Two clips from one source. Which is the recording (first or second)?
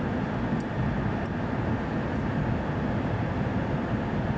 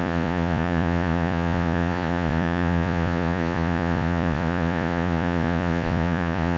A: first